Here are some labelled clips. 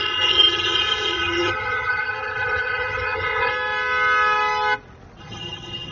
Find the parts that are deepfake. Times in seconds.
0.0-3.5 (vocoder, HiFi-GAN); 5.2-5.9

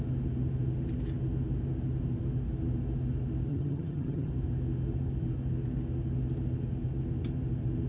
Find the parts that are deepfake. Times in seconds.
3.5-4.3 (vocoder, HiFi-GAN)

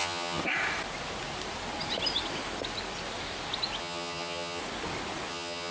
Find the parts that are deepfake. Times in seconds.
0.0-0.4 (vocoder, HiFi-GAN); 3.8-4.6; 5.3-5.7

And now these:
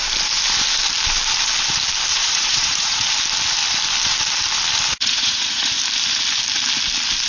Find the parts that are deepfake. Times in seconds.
2.1-3.1 (vocoder, Vocos); 4.9-5.8

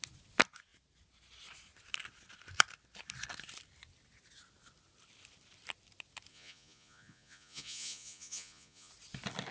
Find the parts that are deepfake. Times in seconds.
6.3-8.9 (vocoder, Vocos)

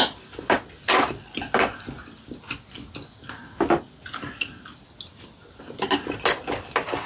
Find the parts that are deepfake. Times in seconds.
none

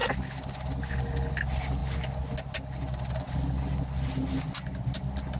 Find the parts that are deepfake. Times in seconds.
none

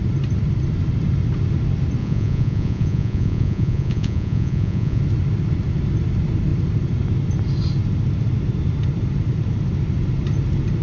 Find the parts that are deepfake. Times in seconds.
2.0-5.0 (vocoder, Vocos)